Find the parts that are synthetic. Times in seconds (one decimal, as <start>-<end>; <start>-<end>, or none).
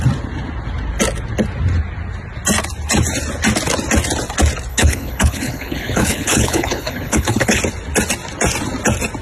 4.7-7.6